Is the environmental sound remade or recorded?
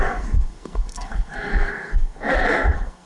remade